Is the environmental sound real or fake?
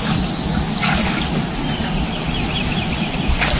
real